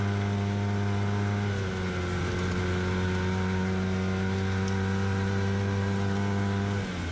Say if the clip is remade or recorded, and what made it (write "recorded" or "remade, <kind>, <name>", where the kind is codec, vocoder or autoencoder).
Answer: recorded